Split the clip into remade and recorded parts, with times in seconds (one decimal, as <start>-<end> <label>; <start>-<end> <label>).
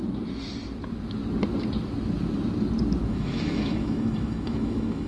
0.0-3.1 recorded; 3.1-5.1 remade